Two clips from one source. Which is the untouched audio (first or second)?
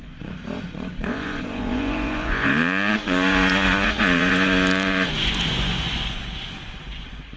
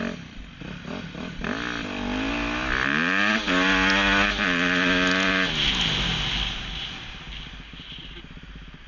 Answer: second